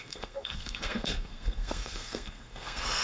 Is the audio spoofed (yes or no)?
yes